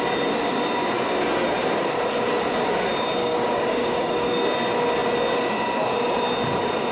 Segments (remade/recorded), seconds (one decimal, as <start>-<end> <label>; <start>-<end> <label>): 0.0-3.2 recorded; 3.2-4.4 remade; 4.4-6.9 recorded